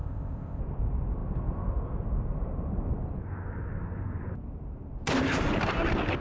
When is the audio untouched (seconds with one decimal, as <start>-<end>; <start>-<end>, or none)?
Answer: 0.6-6.2